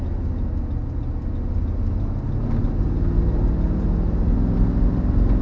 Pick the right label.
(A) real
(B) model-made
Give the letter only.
A